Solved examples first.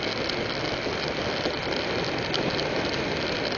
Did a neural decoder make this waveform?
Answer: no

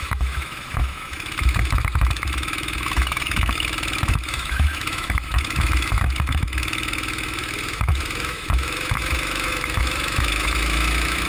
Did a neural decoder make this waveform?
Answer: yes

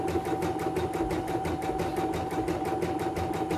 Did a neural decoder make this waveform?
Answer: no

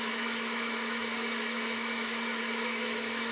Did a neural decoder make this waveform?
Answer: yes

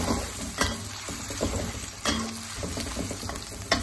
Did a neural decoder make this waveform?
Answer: no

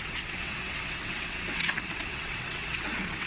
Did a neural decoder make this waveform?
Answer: yes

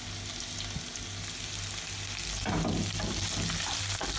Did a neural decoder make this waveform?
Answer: no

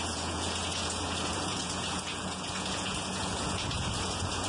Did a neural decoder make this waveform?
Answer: yes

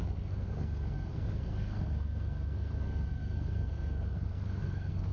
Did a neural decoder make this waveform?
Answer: yes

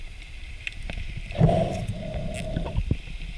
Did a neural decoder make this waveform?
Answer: no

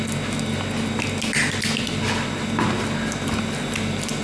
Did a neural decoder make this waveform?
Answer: no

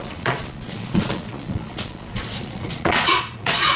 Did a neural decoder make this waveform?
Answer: yes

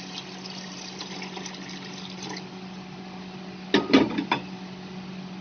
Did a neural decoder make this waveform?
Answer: no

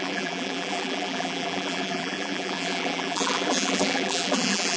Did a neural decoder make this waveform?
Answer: yes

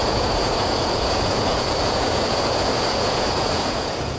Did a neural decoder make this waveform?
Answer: yes